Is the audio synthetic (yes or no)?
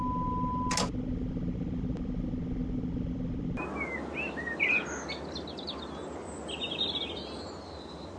no